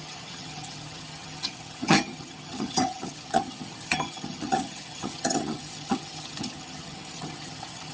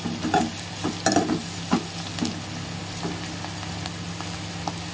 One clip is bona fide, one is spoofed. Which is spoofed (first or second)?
first